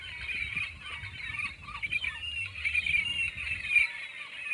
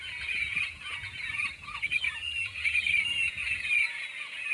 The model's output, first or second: second